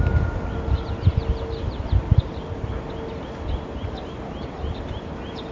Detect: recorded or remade recorded